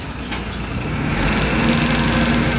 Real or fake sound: real